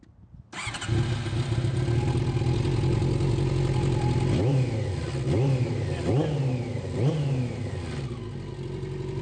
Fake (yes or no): no